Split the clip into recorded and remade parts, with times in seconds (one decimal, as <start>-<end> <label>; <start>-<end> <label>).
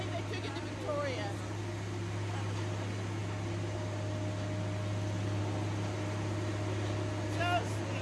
0.0-8.0 recorded